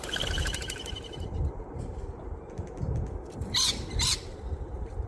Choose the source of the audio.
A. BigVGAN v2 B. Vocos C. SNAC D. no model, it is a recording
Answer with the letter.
A